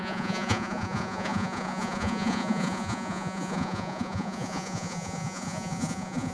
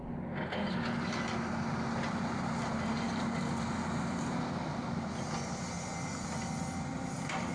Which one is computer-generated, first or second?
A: first